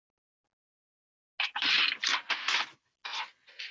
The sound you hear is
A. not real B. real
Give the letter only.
B